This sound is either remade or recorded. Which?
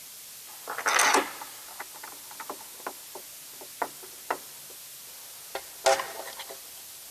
recorded